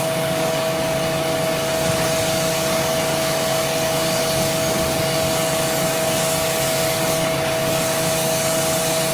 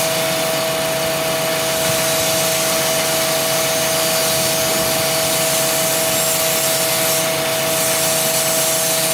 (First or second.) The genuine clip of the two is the second